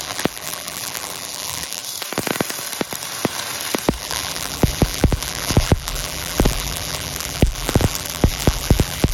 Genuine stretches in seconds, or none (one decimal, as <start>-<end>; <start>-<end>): 1.8-4.0